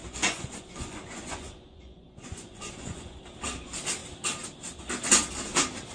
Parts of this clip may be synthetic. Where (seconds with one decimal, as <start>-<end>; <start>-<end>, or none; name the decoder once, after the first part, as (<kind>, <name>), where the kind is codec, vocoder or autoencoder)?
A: 0.0-3.2 (vocoder, Vocos)